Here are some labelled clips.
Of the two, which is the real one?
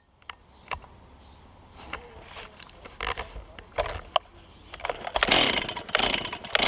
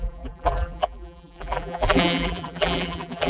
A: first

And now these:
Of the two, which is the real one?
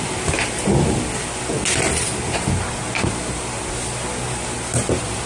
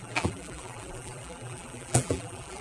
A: first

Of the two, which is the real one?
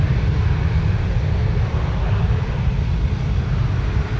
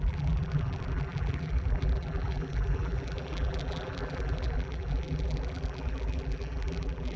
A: first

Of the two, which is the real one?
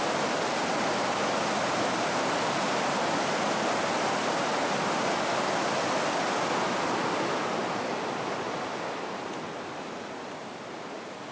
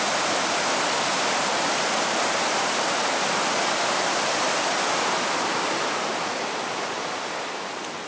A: first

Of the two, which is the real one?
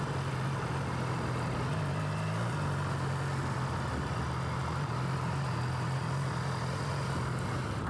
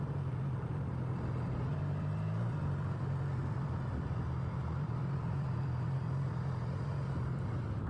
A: first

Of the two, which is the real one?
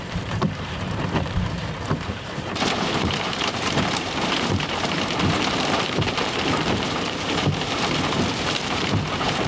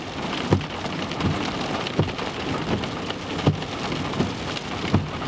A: second